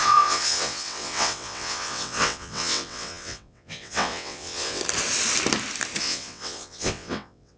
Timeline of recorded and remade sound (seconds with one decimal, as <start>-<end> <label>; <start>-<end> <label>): 0.0-4.8 remade; 4.8-6.0 recorded; 6.0-7.6 remade